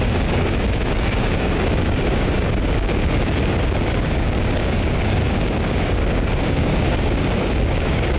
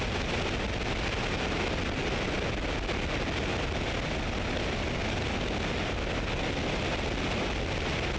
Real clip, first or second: second